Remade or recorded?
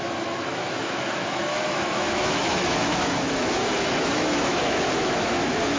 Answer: remade